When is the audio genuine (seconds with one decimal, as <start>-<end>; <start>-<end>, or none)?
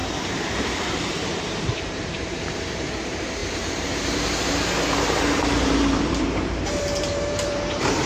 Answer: none